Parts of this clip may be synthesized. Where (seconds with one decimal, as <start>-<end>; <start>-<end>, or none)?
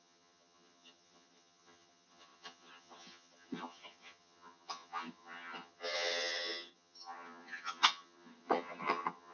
0.0-9.3